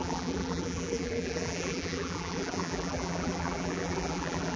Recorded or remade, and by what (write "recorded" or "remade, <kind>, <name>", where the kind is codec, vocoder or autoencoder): remade, vocoder, BigVGAN v2